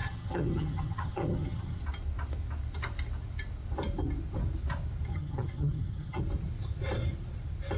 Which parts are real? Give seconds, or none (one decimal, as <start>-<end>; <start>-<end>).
1.8-5.1; 6.2-7.8